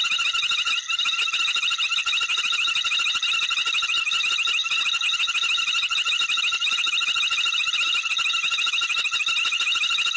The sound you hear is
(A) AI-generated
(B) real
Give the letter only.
B